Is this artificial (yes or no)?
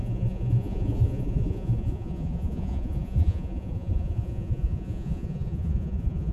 yes